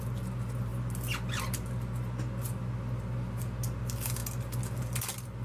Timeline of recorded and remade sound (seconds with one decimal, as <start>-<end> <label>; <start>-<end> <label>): 0.0-5.4 recorded